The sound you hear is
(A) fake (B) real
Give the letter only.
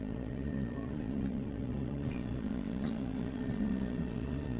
A